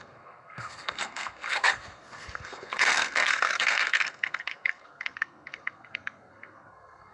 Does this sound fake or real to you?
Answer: fake